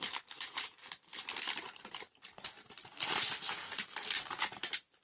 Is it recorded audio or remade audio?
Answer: remade